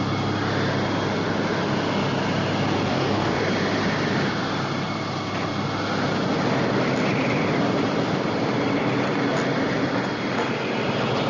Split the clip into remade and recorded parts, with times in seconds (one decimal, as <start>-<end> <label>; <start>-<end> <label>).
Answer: 0.0-2.9 recorded; 2.9-3.4 remade; 3.4-11.3 recorded